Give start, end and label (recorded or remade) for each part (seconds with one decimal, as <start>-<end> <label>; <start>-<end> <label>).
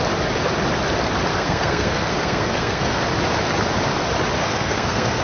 0.0-1.3 recorded; 1.3-3.0 remade; 3.0-4.4 recorded; 4.4-5.2 remade